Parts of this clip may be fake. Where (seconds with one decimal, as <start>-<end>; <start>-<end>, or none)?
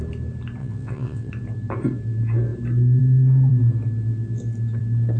0.6-1.3